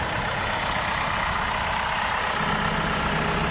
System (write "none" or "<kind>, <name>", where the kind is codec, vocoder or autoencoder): none